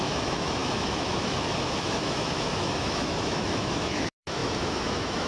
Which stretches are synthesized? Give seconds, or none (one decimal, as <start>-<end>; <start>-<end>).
0.0-5.3